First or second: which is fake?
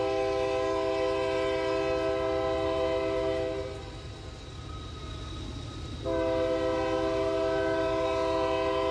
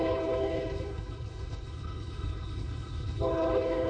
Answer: second